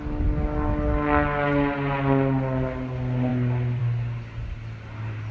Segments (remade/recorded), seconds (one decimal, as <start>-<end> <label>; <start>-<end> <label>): 0.0-5.3 recorded